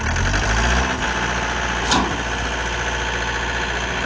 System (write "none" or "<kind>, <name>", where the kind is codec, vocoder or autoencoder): none